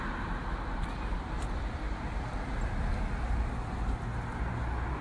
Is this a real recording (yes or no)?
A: yes